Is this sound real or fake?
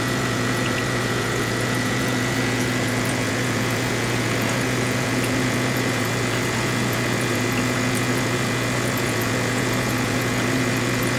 fake